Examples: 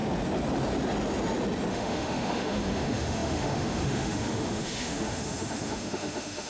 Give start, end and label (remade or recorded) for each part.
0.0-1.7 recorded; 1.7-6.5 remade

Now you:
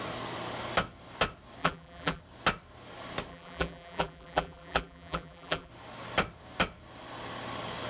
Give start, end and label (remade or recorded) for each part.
0.0-1.6 recorded; 1.6-2.2 remade; 2.2-3.3 recorded; 3.3-5.7 remade; 5.7-7.9 recorded

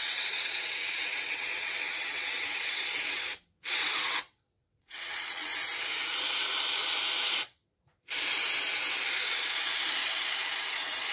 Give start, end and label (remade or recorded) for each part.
0.0-5.5 remade; 5.5-10.7 recorded; 10.7-11.1 remade

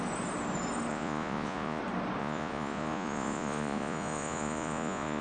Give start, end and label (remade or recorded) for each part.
0.0-0.9 recorded; 0.9-1.8 remade; 1.8-2.2 recorded; 2.2-5.2 remade

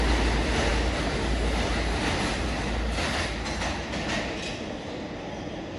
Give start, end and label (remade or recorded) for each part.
0.0-5.8 recorded

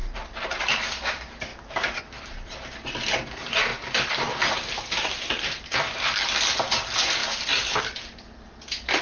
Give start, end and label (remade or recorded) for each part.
0.0-1.5 recorded; 1.5-2.0 remade; 2.0-3.7 recorded; 3.7-5.9 remade; 5.9-7.2 recorded; 7.2-7.8 remade; 7.8-9.0 recorded

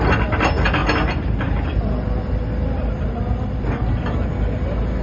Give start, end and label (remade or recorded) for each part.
0.0-5.0 recorded